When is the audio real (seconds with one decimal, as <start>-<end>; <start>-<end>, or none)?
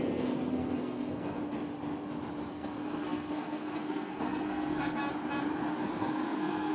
1.4-2.5; 5.0-5.7